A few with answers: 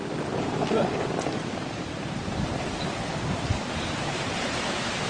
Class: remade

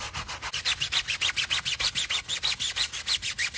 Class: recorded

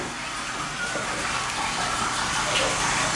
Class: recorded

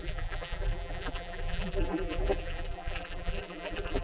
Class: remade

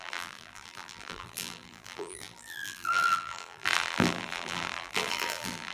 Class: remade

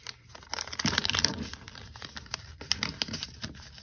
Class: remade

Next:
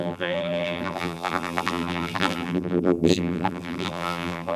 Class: remade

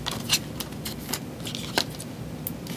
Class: recorded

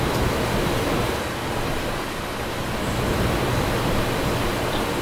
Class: recorded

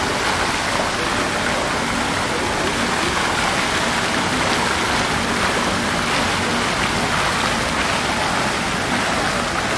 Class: recorded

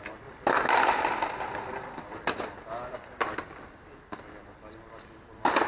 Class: recorded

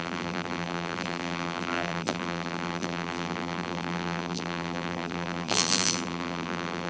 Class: remade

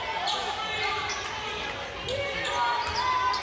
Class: recorded